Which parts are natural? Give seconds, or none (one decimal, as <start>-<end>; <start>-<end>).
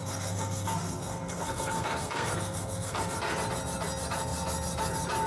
3.2-5.3